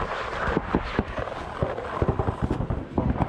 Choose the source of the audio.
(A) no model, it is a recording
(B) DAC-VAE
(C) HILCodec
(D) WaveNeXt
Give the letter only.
A